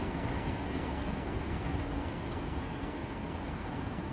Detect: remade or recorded remade